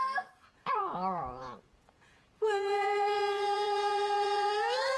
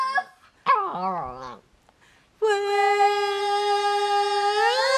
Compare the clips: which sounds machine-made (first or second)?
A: first